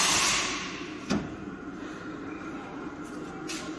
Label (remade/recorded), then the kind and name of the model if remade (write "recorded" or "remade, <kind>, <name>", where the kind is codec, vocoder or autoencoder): recorded